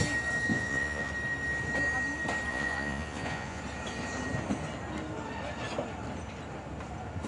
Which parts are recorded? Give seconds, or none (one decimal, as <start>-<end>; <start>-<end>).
0.0-0.5; 1.1-2.5; 3.6-7.3